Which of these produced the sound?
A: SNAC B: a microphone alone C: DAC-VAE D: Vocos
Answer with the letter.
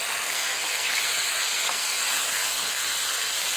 A